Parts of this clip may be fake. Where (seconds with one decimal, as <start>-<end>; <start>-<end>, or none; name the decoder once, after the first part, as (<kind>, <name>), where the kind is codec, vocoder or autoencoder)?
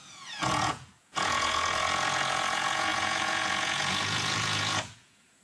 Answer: 0.0-5.4 (vocoder, Vocos)